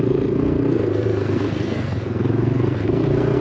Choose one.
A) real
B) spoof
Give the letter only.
B